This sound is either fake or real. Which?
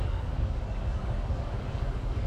fake